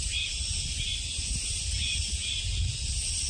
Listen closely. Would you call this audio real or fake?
real